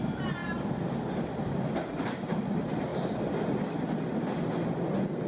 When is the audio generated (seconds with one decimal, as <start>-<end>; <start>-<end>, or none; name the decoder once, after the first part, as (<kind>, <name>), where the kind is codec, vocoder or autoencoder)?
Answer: none